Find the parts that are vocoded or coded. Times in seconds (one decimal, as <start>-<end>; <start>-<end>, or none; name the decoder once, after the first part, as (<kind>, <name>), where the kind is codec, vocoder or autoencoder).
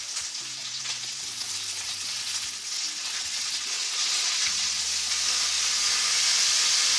0.6-4.8 (vocoder, WaveNeXt)